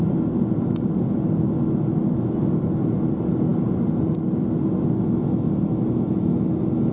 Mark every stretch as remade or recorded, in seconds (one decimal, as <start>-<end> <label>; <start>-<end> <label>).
0.0-6.9 recorded